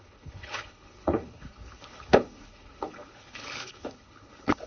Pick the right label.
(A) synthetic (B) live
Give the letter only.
A